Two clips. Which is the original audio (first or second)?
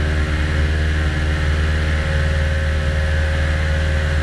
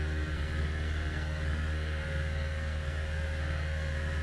first